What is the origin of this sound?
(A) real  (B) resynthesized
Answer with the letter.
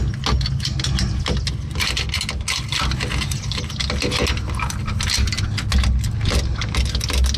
A